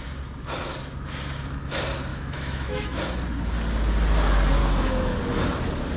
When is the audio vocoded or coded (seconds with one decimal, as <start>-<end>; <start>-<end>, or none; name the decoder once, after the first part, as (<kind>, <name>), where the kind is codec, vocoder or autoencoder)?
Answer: 2.1-3.0 (autoencoder, DAC-VAE); 4.6-5.2